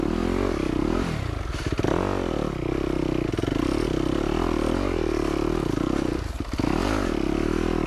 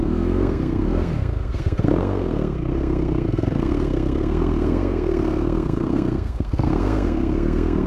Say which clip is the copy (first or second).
second